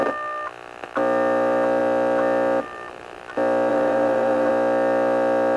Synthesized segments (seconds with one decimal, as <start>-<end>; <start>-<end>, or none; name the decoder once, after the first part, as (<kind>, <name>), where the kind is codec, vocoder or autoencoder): 3.7-4.5 (vocoder, BigVGAN v2)